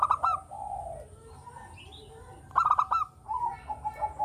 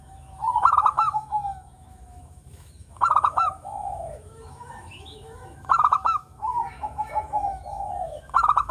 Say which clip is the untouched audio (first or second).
first